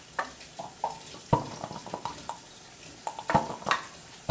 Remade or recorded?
recorded